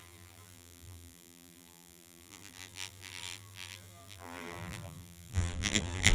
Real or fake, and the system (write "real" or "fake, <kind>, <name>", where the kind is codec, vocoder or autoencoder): fake, vocoder, BigVGAN v2